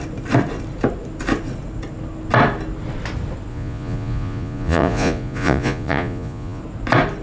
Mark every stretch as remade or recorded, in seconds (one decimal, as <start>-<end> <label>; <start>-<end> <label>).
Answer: 0.0-3.5 recorded; 3.5-6.6 remade; 6.6-7.2 recorded